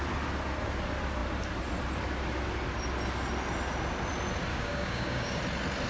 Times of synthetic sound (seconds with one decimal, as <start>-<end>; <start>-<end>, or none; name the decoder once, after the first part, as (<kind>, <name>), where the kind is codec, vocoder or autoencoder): 4.5-5.4 (codec, DAC)